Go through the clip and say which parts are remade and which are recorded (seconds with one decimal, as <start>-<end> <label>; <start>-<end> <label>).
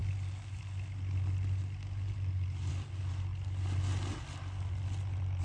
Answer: 0.0-5.4 recorded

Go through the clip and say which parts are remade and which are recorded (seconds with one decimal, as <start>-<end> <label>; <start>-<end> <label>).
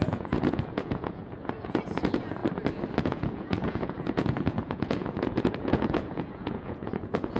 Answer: 0.0-2.4 remade; 2.4-3.0 recorded; 3.0-7.4 remade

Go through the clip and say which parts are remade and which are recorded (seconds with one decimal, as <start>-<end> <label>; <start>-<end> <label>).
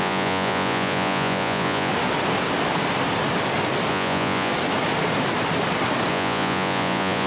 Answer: 0.0-1.9 remade; 1.9-3.9 recorded; 3.9-4.5 remade; 4.5-6.1 recorded; 6.1-7.3 remade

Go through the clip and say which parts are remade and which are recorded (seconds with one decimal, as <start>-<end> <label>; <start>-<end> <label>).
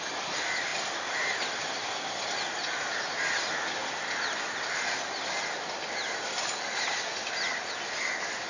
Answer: 0.0-8.5 recorded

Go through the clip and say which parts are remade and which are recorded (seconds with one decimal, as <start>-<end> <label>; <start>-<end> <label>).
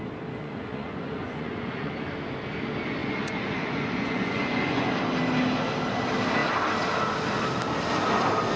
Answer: 0.0-0.4 recorded; 0.4-1.9 remade; 1.9-3.0 recorded; 3.0-4.9 remade; 4.9-8.6 recorded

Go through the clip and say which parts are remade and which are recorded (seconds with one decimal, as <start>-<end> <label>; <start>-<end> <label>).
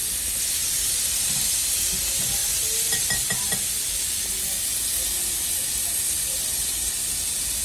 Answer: 0.0-7.6 recorded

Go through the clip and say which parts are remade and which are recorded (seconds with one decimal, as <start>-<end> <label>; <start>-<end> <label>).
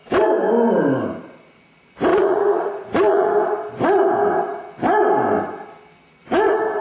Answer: 0.0-2.1 recorded; 2.1-3.3 remade; 3.3-6.8 recorded